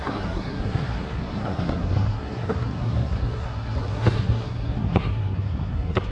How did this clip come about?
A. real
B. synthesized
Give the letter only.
B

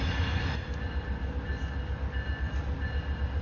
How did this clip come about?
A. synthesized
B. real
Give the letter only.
B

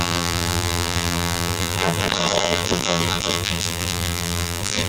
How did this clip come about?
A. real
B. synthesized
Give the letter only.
B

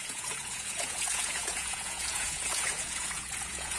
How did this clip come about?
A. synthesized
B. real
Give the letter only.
A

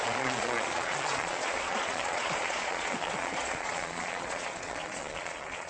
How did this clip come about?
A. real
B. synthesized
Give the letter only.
B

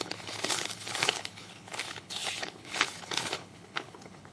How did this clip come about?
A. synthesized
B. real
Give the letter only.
A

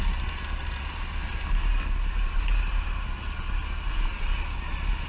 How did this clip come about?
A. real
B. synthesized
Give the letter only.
A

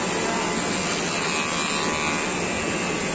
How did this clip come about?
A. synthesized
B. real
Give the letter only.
B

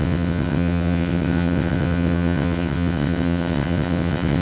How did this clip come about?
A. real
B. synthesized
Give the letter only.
B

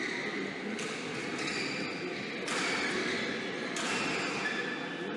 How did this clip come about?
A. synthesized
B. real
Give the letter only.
B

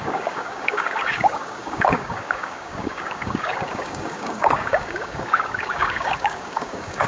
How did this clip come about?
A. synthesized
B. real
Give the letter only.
A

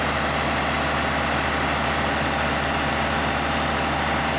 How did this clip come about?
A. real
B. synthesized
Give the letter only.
A